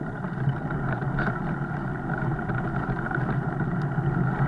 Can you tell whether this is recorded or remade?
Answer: recorded